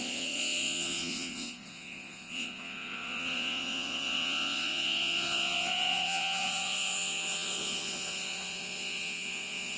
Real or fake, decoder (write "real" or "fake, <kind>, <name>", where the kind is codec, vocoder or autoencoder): fake, vocoder, Vocos